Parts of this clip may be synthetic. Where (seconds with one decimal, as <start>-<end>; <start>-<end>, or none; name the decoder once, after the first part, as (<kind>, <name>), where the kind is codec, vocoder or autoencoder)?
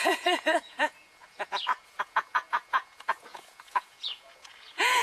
0.0-5.0 (vocoder, Vocos)